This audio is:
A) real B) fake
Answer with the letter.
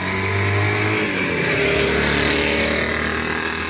A